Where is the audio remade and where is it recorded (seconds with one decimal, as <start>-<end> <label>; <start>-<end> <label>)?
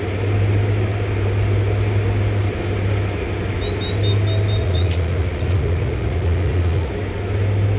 0.0-4.6 recorded; 4.6-6.9 remade; 6.9-7.8 recorded